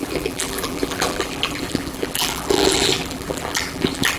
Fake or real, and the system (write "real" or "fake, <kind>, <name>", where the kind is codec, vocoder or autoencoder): fake, vocoder, BigVGAN v2